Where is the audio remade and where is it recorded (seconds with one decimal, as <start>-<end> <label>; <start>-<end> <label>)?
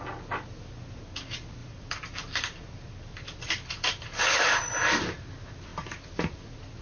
0.0-1.6 recorded; 1.6-4.2 remade; 4.2-5.7 recorded; 5.7-6.8 remade